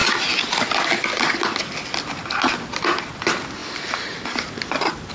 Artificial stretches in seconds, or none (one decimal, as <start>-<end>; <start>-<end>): none